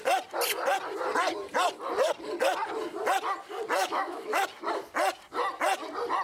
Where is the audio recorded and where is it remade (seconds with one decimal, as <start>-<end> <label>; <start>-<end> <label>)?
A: 0.0-3.8 recorded; 3.8-4.4 remade; 4.4-6.2 recorded